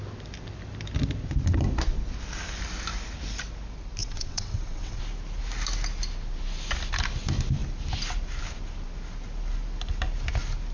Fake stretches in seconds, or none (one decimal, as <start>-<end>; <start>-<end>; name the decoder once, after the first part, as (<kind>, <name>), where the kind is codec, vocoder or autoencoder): 4.0-5.0 (vocoder, WaveNeXt)

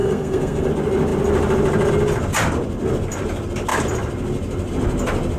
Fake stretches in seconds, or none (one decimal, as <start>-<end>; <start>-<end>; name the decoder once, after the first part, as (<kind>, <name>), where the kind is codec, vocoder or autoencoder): 0.0-0.7 (codec, SNAC)